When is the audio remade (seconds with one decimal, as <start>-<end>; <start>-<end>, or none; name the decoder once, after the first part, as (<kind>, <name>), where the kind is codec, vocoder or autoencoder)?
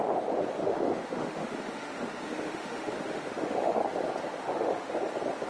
0.6-3.8 (autoencoder, DAC-VAE); 4.3-5.0